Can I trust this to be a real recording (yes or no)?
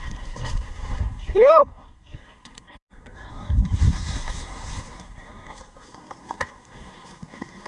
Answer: no